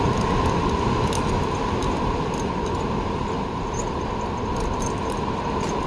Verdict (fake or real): real